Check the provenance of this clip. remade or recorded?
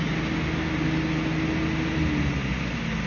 recorded